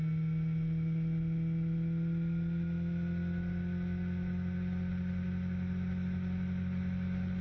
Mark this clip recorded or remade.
recorded